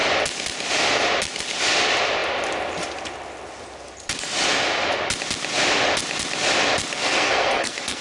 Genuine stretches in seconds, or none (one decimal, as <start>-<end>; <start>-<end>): 0.0-6.9